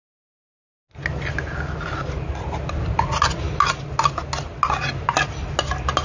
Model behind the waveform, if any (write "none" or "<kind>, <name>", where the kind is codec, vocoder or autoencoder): none